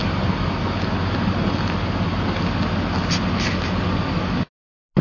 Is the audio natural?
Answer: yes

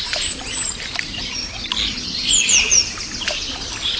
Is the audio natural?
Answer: yes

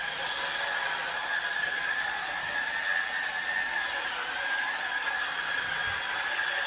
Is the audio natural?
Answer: yes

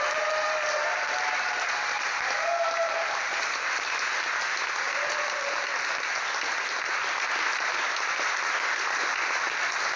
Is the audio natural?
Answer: yes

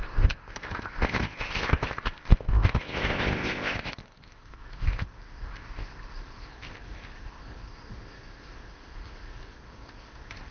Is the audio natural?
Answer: no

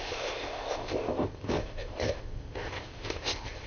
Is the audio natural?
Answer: no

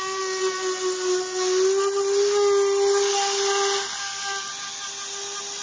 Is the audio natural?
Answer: yes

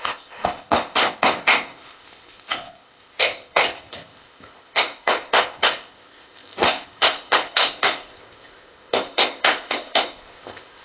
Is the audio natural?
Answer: no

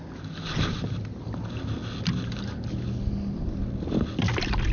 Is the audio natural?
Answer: yes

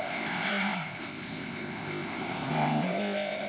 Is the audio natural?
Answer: no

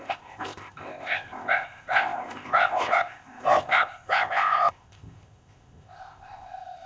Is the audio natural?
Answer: no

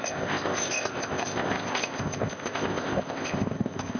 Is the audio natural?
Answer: no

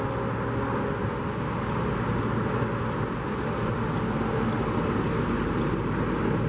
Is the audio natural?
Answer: yes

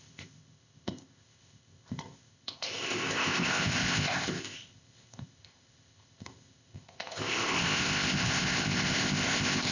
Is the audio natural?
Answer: no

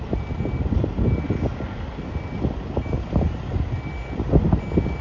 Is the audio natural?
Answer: yes